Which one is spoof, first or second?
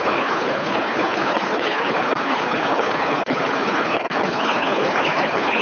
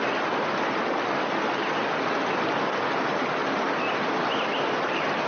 first